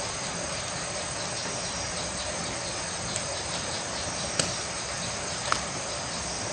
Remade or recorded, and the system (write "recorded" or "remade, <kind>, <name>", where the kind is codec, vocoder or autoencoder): recorded